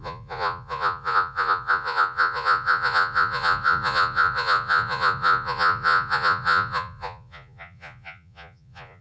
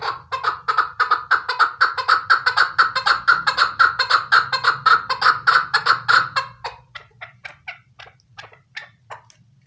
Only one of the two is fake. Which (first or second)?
first